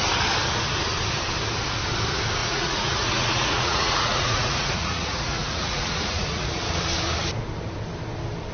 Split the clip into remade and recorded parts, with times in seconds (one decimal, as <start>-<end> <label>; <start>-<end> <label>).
0.0-2.4 recorded; 2.4-6.6 remade; 6.6-8.5 recorded

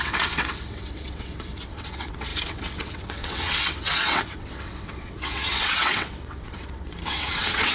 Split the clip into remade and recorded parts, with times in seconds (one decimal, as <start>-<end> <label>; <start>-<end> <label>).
0.0-7.7 remade

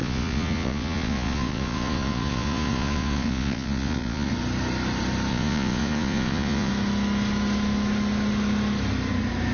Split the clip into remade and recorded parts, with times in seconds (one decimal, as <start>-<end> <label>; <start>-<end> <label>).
0.0-4.3 remade; 4.3-5.3 recorded; 5.3-6.7 remade; 6.7-9.5 recorded

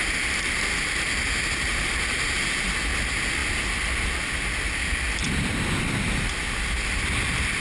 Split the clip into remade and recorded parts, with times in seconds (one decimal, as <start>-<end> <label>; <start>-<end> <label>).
0.0-7.6 recorded

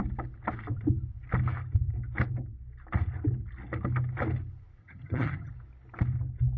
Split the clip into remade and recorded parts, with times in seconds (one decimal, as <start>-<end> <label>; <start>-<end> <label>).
0.0-4.8 recorded; 4.8-5.5 remade; 5.5-6.6 recorded